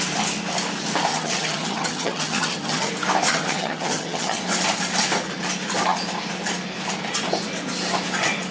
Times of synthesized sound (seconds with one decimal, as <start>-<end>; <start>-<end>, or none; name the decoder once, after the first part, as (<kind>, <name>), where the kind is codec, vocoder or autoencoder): 1.1-2.9 (vocoder, HiFi-GAN); 3.3-4.4